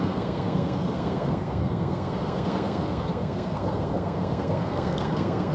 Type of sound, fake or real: fake